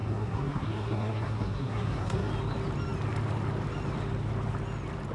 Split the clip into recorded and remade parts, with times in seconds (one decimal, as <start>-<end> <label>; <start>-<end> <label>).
0.0-2.3 remade; 2.3-5.1 recorded